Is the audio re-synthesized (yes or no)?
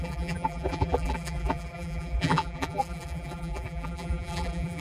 yes